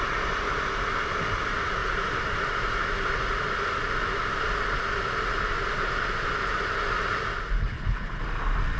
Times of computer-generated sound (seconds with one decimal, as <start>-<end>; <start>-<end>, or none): 7.6-8.2